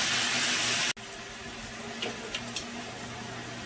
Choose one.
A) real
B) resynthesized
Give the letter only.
A